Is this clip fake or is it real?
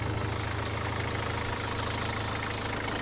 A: real